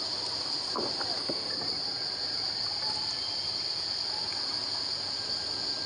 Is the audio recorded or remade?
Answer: recorded